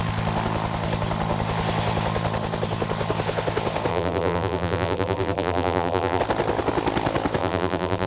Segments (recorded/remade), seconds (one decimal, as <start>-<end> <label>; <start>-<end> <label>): 0.0-3.9 recorded; 3.9-6.2 remade; 6.2-7.4 recorded; 7.4-8.1 remade